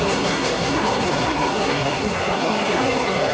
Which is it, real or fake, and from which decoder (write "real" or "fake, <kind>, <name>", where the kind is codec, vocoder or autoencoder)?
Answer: fake, codec, SNAC